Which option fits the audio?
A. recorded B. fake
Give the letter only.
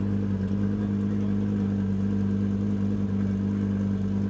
A